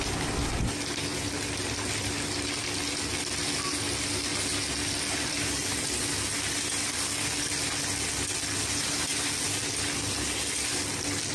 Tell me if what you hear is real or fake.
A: real